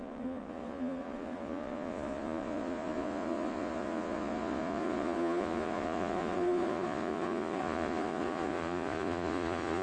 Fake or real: fake